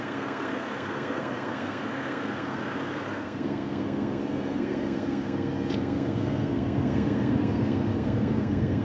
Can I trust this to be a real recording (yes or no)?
no